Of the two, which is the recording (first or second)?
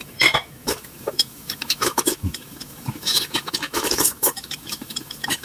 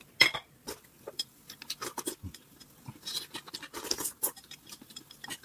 second